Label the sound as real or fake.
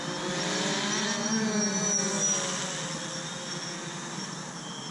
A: real